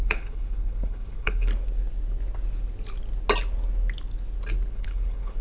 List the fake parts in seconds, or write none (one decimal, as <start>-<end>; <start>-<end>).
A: 0.0-1.5; 4.7-5.4